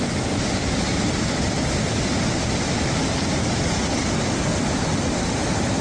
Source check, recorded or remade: recorded